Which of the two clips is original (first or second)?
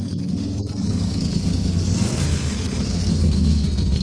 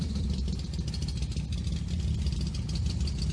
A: second